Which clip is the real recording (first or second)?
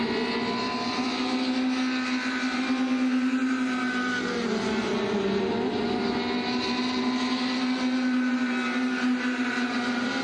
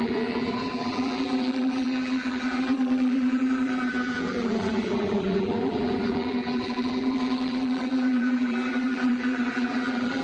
first